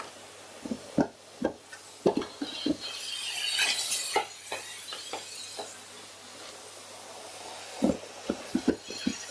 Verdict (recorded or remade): recorded